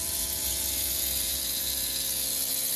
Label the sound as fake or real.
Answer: fake